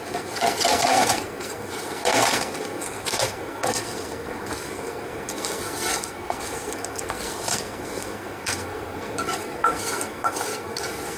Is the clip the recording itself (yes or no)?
no